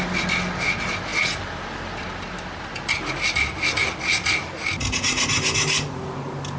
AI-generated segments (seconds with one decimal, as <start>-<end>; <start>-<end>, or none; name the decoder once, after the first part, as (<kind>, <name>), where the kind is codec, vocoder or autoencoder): none